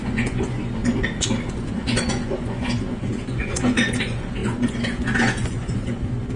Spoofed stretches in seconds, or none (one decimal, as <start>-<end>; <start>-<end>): 0.0-0.8; 1.5-6.4